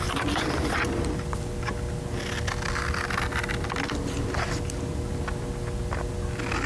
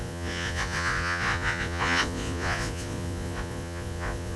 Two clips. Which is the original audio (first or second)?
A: first